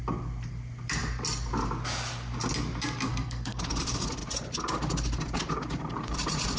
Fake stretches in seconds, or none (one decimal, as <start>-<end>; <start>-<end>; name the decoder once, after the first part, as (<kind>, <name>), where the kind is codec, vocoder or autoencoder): 3.1-3.6 (codec, SNAC)

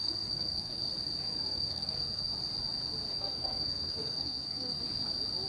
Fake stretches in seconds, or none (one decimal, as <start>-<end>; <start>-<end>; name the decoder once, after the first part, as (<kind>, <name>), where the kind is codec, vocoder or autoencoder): 0.0-0.8 (codec, SNAC); 1.3-2.3; 3.1-4.8

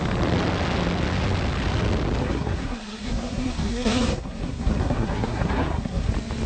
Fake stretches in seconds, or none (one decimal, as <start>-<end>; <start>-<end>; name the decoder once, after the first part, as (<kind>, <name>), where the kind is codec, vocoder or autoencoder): 2.2-6.1 (codec, SNAC)

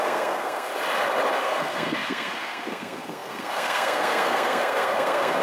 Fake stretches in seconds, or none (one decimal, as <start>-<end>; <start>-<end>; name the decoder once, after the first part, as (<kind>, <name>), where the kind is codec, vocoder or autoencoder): 0.0-0.7 (codec, SNAC); 1.4-5.4

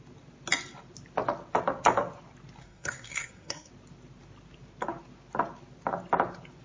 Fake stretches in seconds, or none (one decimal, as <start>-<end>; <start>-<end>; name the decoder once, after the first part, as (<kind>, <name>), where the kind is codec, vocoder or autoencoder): 2.6-3.7 (codec, SNAC)

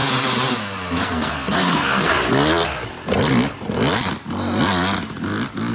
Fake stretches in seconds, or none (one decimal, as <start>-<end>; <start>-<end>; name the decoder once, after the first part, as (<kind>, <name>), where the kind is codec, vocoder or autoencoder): 0.9-2.1 (codec, SNAC)